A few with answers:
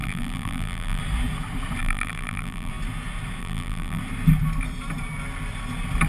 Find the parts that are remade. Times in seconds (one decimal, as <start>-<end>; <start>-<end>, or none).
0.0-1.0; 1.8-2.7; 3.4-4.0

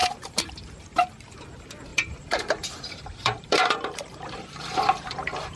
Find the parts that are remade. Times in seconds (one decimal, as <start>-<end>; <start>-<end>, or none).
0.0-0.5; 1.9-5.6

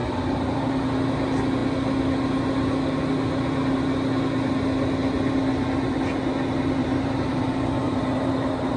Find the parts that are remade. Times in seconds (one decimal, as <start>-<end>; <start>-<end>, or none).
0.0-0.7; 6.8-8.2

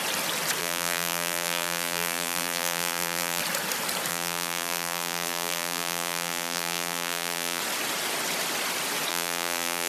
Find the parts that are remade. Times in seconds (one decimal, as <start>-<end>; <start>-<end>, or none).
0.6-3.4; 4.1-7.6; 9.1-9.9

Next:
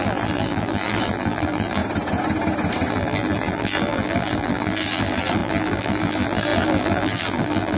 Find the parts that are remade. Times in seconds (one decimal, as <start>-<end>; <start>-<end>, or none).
0.0-1.8; 2.9-7.8

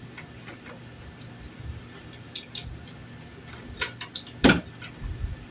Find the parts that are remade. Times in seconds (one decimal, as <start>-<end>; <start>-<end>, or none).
0.0-2.6; 4.7-5.5

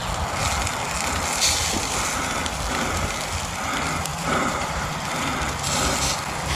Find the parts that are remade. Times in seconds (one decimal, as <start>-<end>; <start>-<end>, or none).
4.1-4.9